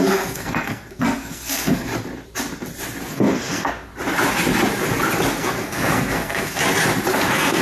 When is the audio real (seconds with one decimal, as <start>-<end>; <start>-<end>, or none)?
1.9-3.1; 3.9-5.3; 6.6-7.1